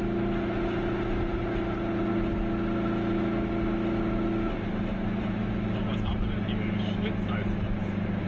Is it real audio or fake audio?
real